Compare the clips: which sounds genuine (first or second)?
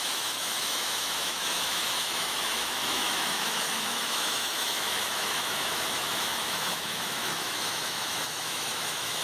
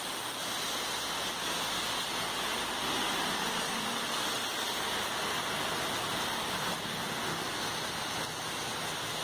second